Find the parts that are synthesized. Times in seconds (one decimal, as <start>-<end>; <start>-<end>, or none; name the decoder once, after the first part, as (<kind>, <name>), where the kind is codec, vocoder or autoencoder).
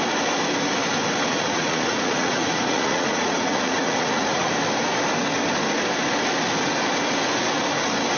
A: 1.3-4.5 (vocoder, Vocos)